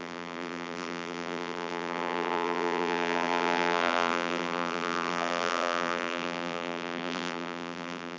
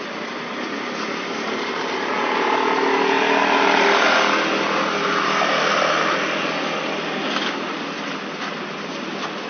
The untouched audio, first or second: second